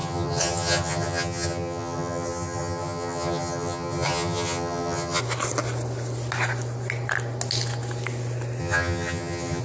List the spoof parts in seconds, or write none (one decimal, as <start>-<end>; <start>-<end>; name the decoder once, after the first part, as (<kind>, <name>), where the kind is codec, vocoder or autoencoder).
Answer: 0.0-5.2 (vocoder, HiFi-GAN); 8.6-9.6